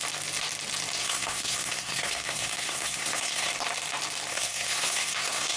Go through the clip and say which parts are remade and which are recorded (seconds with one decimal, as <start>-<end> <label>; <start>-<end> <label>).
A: 0.0-1.0 recorded; 1.0-3.5 remade; 3.5-4.3 recorded; 4.3-5.6 remade